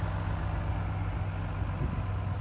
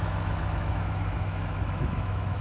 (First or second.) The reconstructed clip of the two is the second